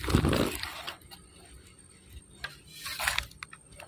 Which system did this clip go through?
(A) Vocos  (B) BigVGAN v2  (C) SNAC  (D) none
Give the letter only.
D